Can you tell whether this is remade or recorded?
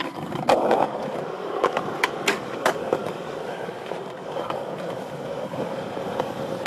remade